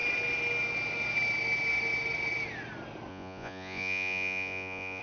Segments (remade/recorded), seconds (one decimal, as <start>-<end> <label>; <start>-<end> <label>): 0.0-3.1 recorded; 3.1-5.0 remade